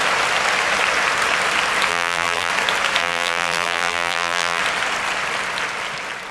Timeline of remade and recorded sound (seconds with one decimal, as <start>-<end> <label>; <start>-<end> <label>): 0.0-1.9 recorded; 1.9-2.5 remade; 2.5-3.0 recorded; 3.0-4.6 remade; 4.6-6.3 recorded